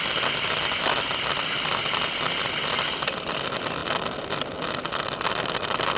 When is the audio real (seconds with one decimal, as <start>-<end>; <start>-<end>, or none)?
0.0-6.0